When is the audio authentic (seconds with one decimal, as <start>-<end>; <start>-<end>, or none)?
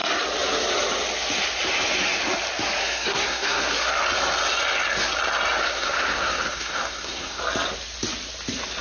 0.0-2.8; 4.0-5.6; 7.4-8.8